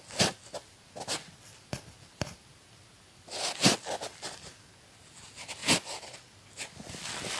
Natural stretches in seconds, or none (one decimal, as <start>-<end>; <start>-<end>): 0.0-7.4